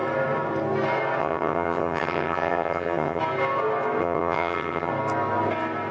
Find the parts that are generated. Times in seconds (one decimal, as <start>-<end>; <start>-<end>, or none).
1.2-3.2; 4.0-4.9